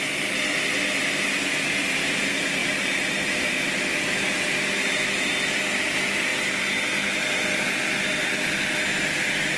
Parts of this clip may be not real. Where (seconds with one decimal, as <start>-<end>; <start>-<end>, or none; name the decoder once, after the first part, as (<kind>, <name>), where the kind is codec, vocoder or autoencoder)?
none